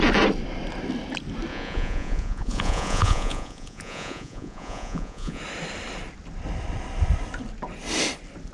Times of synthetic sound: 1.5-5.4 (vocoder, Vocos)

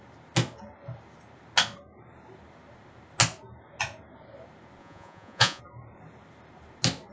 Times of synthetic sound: 4.8-5.6 (vocoder, Vocos)

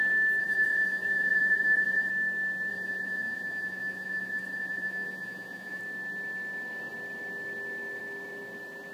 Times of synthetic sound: 0.4-2.1 (vocoder, Vocos); 2.7-5.8